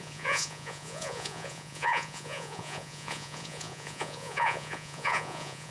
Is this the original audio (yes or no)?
no